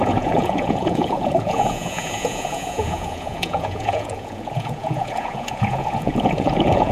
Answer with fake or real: fake